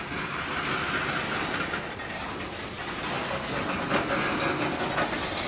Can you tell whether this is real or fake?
real